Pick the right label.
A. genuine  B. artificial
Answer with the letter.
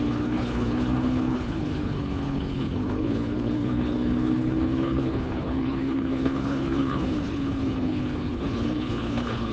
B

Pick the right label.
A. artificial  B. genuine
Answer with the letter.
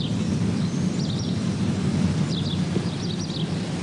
B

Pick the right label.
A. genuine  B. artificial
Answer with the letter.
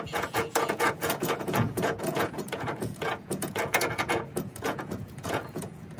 B